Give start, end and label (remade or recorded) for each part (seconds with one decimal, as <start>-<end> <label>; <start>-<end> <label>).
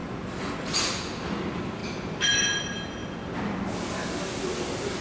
0.0-5.0 recorded